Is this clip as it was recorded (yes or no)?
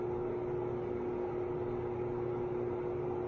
yes